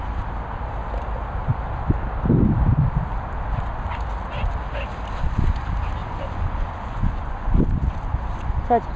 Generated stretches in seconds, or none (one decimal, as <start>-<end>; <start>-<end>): 6.0-7.6